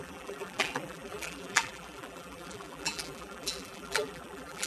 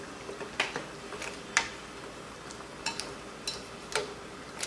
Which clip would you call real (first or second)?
second